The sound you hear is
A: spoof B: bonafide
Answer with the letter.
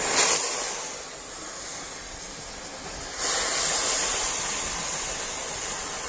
B